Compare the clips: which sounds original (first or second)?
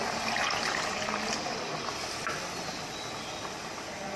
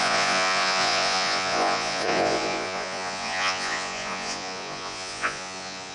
first